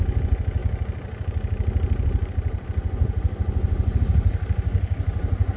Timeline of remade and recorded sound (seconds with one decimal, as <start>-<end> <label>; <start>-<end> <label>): 0.0-5.6 recorded